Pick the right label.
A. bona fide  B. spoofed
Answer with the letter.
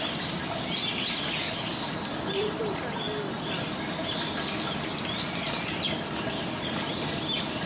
A